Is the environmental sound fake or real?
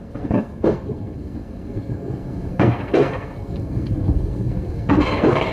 fake